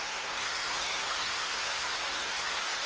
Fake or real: fake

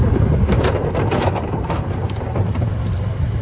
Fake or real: fake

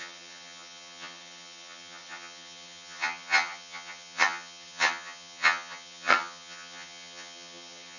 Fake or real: fake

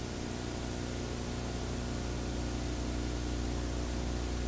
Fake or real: real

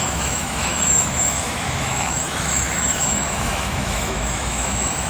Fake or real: fake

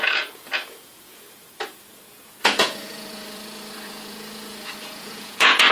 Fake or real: fake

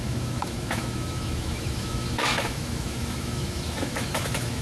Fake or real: fake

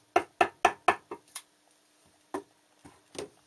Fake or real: real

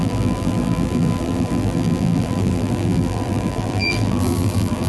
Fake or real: fake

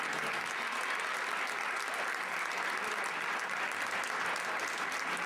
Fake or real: real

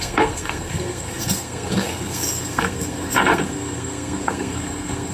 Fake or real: fake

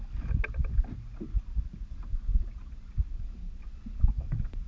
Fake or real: real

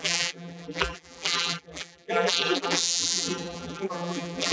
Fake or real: fake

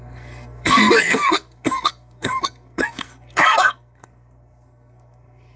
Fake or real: fake